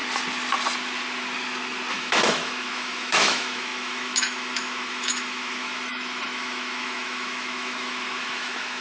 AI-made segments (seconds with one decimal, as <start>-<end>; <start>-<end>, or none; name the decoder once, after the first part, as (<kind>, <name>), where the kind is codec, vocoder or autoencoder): 1.9-8.8 (autoencoder, DAC-VAE)